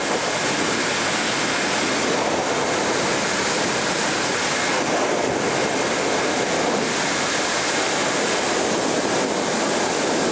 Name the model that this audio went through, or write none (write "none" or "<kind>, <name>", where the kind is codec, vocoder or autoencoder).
none